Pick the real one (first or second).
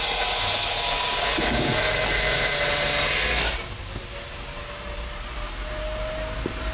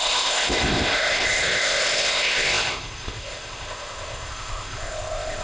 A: first